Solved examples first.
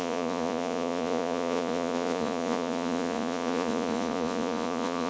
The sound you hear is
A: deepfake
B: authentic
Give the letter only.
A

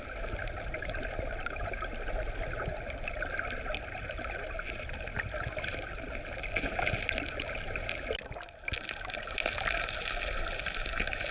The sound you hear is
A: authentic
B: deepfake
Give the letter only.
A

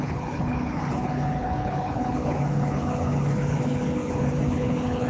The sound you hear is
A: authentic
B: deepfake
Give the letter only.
B